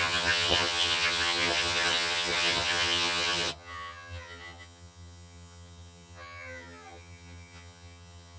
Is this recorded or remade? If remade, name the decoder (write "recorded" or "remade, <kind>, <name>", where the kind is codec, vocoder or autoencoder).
remade, vocoder, HiFi-GAN